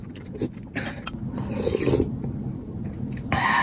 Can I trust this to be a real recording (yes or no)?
yes